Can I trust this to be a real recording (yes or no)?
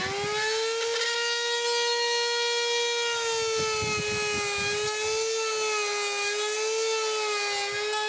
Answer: yes